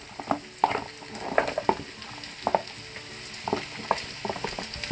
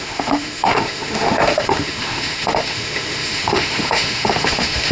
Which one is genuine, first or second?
first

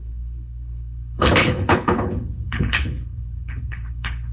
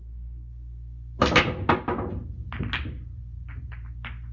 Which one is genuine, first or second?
second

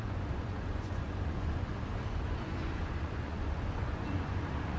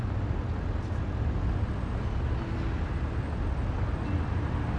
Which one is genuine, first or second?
second